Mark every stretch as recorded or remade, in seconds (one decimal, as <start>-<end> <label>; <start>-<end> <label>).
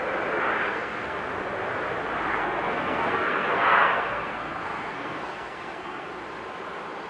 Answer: 0.0-0.7 recorded; 0.7-1.2 remade; 1.2-2.3 recorded; 2.3-6.1 remade; 6.1-7.1 recorded